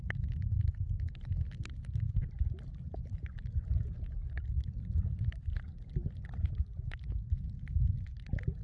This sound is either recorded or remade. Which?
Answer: recorded